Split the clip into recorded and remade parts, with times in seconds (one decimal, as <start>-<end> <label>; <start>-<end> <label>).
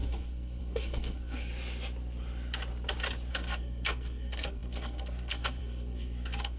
0.0-1.5 remade; 1.5-3.3 recorded; 3.3-6.6 remade